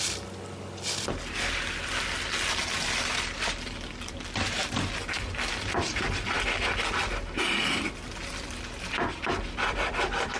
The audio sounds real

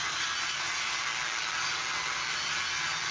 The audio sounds real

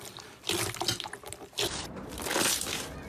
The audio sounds real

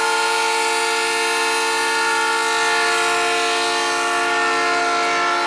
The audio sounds real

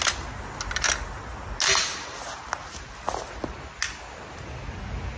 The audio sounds real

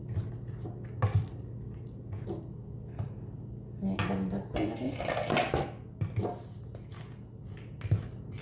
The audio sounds real